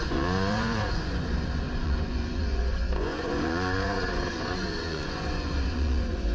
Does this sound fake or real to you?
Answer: fake